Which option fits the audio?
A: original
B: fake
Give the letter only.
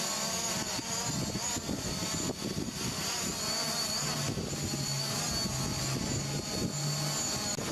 A